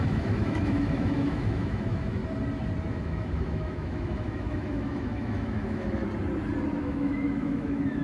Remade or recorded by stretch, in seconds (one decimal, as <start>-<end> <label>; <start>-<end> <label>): 0.0-2.2 remade; 2.2-2.9 recorded; 2.9-6.0 remade; 6.0-6.8 recorded; 6.8-8.0 remade